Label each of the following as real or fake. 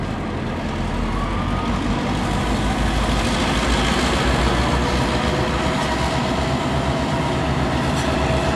real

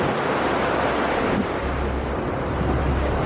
real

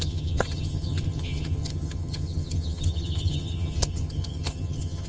fake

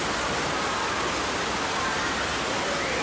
real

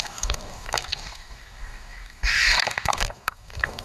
fake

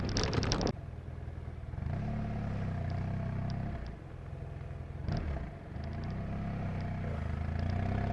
real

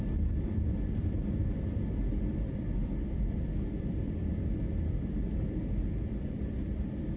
fake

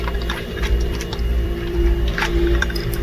fake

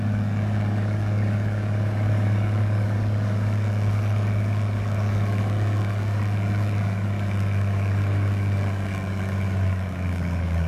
fake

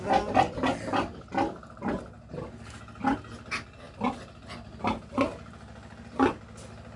real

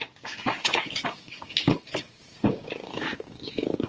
fake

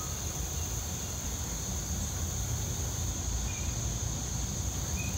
real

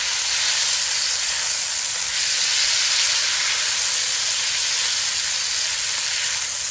real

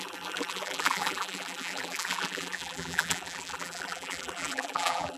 fake